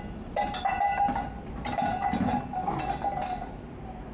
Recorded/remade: recorded